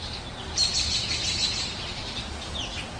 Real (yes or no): yes